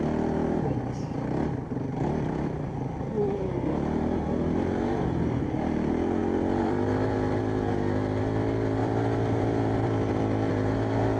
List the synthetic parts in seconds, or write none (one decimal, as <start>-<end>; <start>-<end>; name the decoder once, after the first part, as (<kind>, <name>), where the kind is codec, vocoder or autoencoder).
6.2-7.4 (vocoder, BigVGAN v2); 8.8-10.5